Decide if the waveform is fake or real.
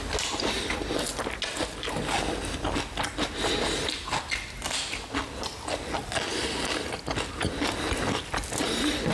real